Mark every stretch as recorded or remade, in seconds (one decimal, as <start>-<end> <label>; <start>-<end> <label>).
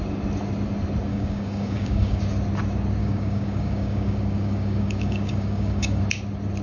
0.0-1.1 recorded; 1.1-2.2 remade; 2.2-3.0 recorded; 3.0-6.0 remade; 6.0-6.6 recorded